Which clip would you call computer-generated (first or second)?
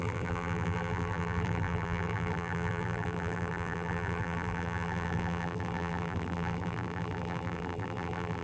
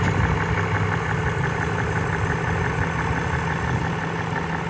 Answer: first